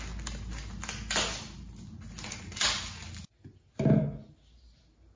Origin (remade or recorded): recorded